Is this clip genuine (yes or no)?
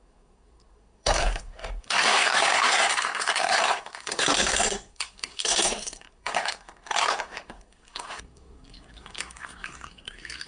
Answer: no